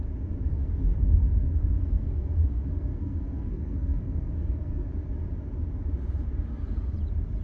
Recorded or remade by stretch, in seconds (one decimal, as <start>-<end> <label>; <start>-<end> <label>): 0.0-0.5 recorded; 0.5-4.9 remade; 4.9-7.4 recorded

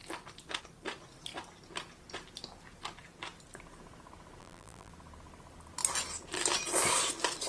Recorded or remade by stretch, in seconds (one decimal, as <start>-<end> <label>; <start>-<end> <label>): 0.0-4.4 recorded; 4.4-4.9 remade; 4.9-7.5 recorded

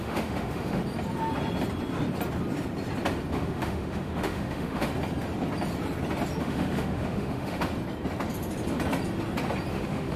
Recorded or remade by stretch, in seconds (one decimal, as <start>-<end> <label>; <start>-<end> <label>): 0.0-0.8 remade; 0.8-3.3 recorded; 3.3-4.9 remade; 4.9-6.4 recorded; 6.4-7.7 remade; 7.7-9.7 recorded; 9.7-10.2 remade